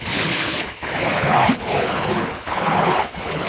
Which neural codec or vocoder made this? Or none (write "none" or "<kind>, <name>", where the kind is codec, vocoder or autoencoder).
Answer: codec, HILCodec